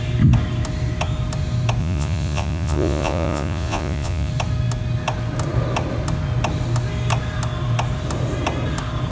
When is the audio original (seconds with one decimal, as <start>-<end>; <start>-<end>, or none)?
0.0-1.8; 4.3-9.1